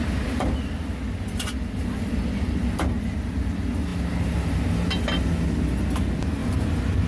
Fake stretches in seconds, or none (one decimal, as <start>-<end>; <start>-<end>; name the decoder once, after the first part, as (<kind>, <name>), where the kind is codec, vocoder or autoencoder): 6.4-7.1 (vocoder, BigVGAN v2)